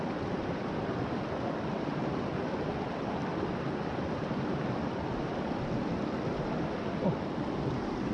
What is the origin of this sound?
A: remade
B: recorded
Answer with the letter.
B